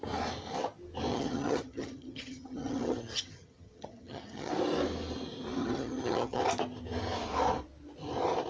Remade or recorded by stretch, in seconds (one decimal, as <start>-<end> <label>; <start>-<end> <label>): 0.0-1.1 recorded; 1.1-4.5 remade; 4.5-5.6 recorded; 5.6-6.4 remade; 6.4-8.5 recorded